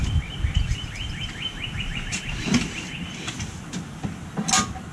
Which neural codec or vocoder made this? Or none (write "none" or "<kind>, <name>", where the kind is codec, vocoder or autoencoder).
none